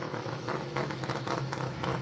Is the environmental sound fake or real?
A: fake